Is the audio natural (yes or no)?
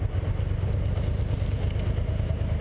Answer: yes